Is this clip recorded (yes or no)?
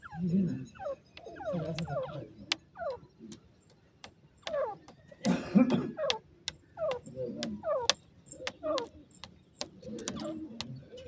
yes